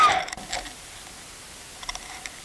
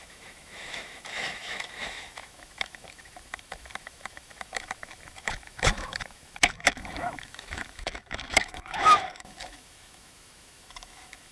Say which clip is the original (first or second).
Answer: first